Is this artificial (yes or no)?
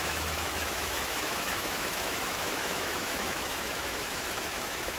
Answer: yes